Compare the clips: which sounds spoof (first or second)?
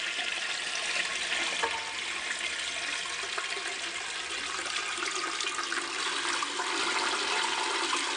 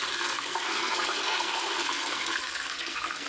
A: second